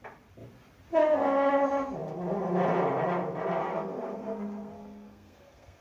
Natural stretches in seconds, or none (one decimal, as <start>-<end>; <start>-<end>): 0.0-3.6